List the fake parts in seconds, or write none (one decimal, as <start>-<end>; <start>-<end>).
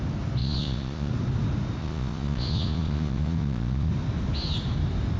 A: 0.4-1.1; 1.8-3.9